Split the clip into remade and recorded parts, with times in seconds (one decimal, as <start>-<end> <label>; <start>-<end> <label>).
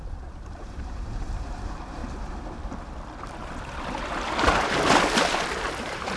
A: 0.0-2.0 remade; 2.0-5.7 recorded; 5.7-6.2 remade